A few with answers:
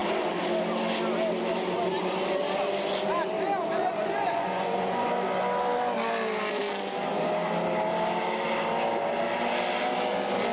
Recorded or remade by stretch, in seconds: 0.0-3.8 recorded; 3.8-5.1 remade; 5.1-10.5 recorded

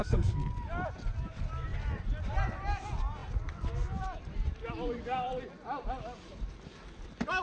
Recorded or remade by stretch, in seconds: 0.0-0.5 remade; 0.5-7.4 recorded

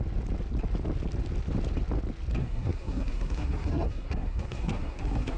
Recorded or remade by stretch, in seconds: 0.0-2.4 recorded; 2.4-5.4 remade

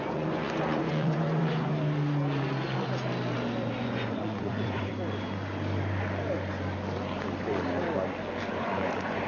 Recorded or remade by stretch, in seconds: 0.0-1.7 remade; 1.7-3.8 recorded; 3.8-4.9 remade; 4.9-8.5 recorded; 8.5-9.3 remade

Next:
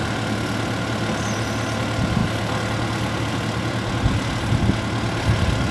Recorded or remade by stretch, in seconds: 0.0-5.7 recorded

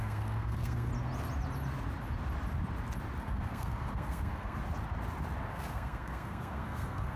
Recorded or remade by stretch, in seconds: 0.0-0.9 remade; 0.9-3.2 recorded; 3.2-4.6 remade; 4.6-5.5 recorded; 5.5-7.2 remade